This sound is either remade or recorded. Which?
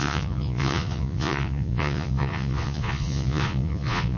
remade